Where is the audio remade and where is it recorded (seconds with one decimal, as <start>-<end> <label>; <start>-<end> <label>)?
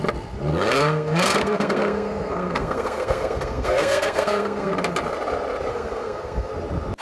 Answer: 0.0-0.5 recorded; 0.5-4.7 remade; 4.7-5.7 recorded; 5.7-6.5 remade; 6.5-7.0 recorded